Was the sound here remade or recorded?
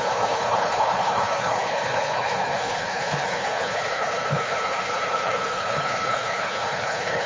remade